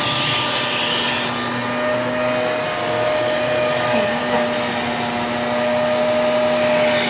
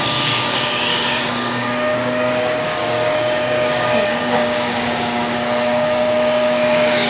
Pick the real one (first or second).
first